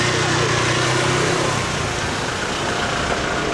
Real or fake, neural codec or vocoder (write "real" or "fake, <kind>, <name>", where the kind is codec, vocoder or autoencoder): real